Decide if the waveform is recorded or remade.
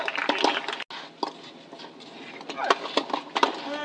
recorded